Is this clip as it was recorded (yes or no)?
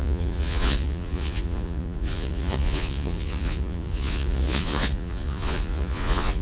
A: no